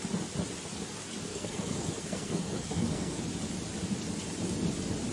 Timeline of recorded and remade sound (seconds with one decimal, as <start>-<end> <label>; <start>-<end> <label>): 0.0-1.3 recorded; 1.3-3.2 remade; 3.2-5.1 recorded